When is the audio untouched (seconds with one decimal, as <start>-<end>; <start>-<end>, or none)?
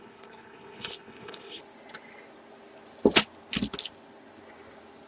1.6-5.1